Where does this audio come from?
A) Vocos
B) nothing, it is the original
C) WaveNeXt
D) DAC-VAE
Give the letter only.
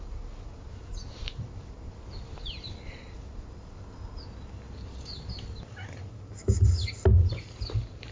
B